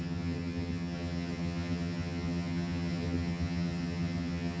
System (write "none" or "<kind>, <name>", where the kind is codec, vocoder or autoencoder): vocoder, HiFi-GAN